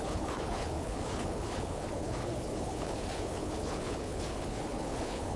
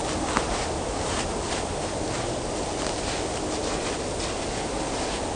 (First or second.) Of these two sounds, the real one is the second